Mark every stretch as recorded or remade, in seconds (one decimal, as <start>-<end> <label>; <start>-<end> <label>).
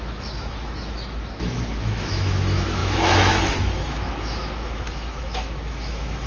0.0-6.3 remade